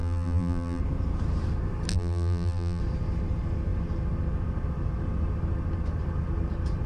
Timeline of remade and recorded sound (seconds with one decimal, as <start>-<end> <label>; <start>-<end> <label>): 0.0-0.8 remade; 0.8-1.9 recorded; 1.9-2.8 remade; 2.8-6.9 recorded